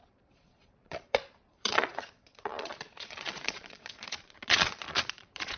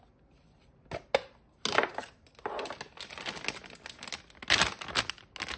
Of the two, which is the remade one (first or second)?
first